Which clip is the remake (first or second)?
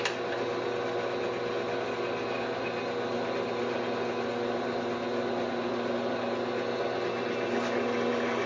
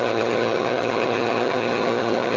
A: second